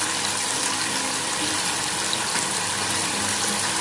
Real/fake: real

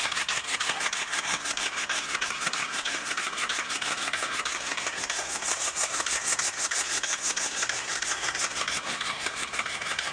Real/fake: fake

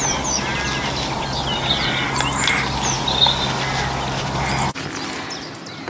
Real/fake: real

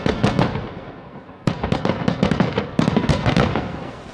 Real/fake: fake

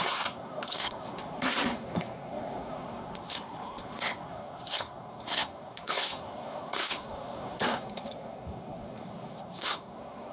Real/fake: fake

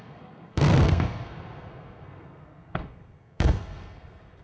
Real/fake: fake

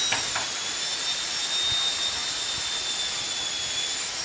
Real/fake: real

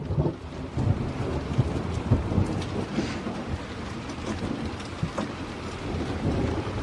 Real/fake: real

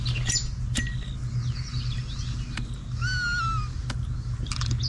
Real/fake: real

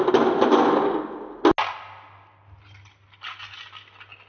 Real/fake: real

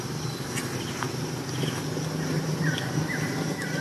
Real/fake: real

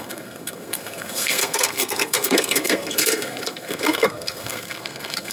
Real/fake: fake